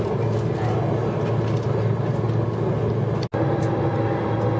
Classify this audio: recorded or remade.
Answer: recorded